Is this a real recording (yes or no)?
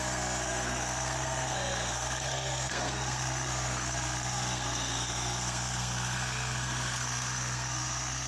no